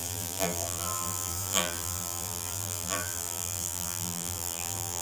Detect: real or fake fake